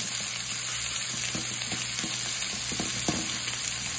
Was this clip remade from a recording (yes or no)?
no